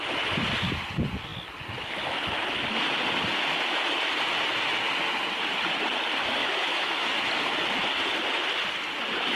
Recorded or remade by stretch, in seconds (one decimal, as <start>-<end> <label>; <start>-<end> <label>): 0.0-6.4 recorded; 6.4-7.3 remade; 7.3-9.4 recorded